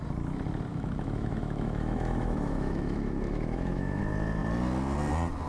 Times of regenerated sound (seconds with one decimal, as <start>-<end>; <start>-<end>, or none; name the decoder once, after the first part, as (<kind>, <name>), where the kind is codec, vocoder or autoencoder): 0.7-4.0 (autoencoder, DAC-VAE)